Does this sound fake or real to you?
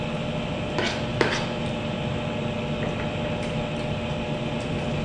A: real